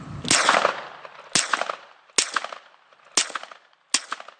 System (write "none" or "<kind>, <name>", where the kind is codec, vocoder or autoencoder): none